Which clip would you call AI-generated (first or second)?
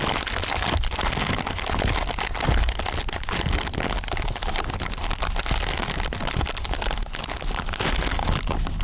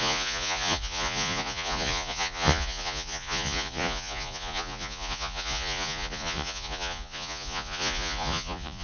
second